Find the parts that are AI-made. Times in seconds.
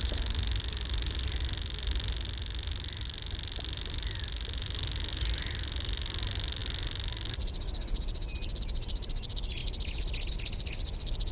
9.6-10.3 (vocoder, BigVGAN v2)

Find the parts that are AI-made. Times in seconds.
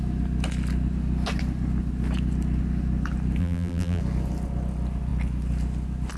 3.4-4.0 (vocoder, BigVGAN v2)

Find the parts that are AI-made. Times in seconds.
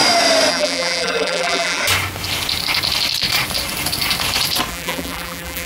0.5-1.8 (vocoder, BigVGAN v2); 4.7-5.7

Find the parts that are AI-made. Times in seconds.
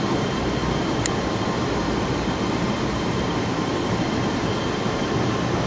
0.6-4.0 (vocoder, BigVGAN v2)